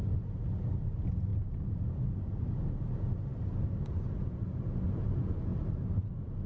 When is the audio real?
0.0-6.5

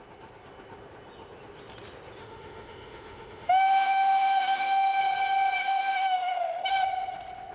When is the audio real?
0.0-2.2; 5.0-5.6; 6.7-7.5